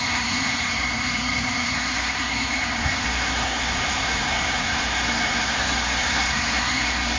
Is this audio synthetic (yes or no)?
yes